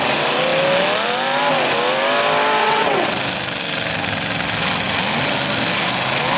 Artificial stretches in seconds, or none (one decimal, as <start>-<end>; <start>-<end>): 2.6-3.1